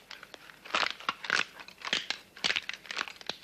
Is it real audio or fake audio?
real